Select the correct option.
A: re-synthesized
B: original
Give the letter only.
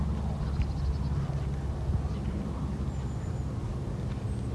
B